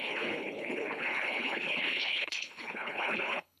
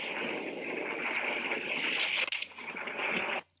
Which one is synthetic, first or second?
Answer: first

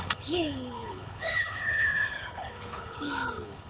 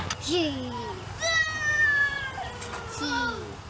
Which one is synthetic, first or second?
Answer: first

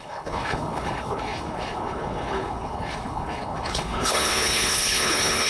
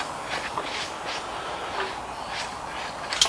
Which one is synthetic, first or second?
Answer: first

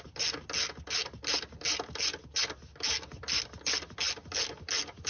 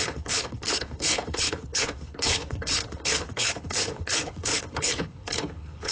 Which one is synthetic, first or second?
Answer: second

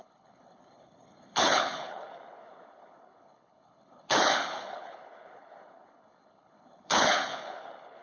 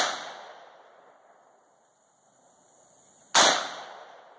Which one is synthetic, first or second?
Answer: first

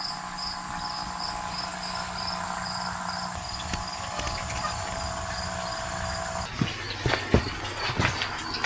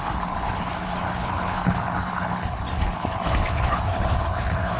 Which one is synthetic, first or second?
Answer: second